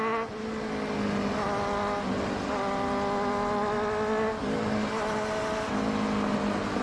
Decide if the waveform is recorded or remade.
recorded